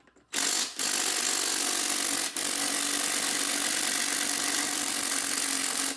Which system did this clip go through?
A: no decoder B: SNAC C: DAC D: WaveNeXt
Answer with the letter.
A